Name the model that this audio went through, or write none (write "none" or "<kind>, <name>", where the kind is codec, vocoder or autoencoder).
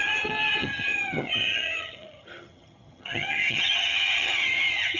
vocoder, HiFi-GAN